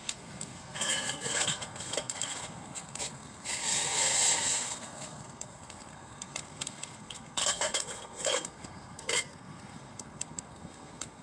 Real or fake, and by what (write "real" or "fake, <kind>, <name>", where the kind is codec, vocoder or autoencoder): fake, codec, SNAC